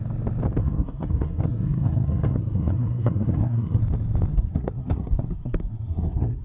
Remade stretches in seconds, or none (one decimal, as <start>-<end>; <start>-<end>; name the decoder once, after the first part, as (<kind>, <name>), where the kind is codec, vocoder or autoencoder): 0.6-3.8 (codec, SNAC); 4.3-6.4